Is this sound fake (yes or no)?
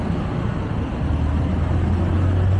no